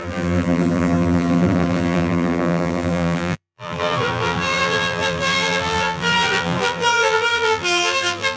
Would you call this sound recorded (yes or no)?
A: no